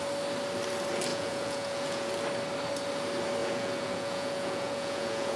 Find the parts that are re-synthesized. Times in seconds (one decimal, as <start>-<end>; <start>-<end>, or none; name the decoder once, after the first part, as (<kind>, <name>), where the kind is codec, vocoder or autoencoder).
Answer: 1.1-2.1 (vocoder, Vocos); 3.4-5.4